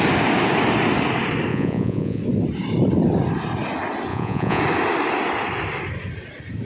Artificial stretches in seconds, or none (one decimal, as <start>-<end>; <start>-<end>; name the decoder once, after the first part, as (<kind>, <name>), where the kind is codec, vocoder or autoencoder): 1.5-2.2 (vocoder, Vocos); 4.1-4.6